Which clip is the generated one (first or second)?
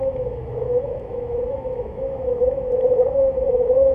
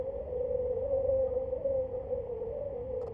first